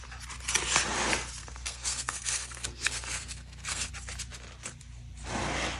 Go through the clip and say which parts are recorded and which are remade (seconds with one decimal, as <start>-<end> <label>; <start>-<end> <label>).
0.0-1.4 recorded; 1.4-3.9 remade; 3.9-5.8 recorded